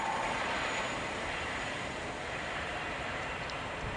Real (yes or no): no